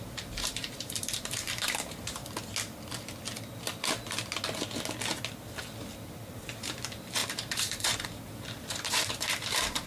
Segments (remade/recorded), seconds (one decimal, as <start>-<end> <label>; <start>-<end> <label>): 0.0-2.2 remade; 2.2-6.6 recorded; 6.6-9.9 remade